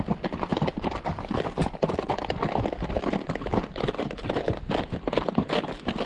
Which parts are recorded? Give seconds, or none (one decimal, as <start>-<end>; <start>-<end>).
0.0-6.1